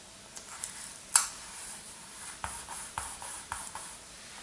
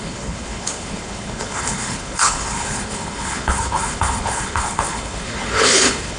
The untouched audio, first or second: first